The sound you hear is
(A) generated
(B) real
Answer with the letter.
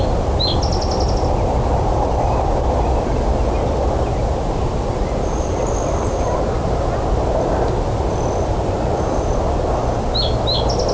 B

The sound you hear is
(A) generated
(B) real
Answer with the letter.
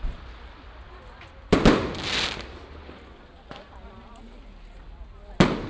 B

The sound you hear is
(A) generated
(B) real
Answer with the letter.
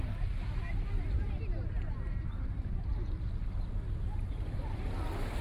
B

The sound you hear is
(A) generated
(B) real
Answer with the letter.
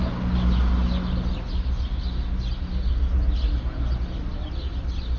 B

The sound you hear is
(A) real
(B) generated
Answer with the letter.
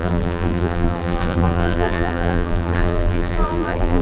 B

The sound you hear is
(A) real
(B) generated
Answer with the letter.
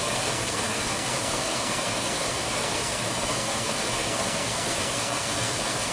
B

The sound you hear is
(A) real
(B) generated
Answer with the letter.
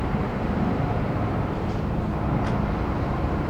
B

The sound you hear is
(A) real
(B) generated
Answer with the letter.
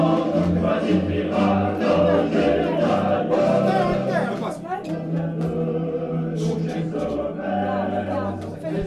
A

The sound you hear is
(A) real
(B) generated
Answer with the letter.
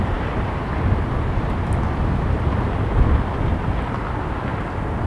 A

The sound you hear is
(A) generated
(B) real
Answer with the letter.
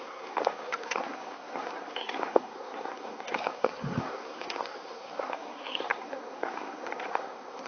A